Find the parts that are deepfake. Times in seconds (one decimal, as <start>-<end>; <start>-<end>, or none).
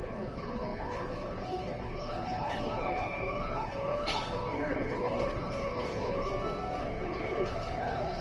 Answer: 0.0-6.3; 6.8-8.2